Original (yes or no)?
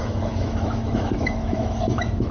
no